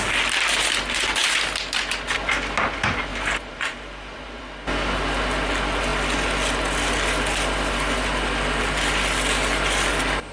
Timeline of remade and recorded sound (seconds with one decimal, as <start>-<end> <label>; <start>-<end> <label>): 0.0-3.1 recorded; 3.1-4.4 remade; 4.4-10.3 recorded